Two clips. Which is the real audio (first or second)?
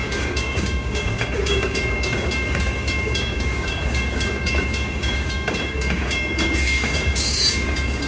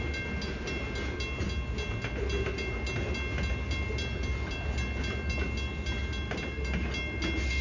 second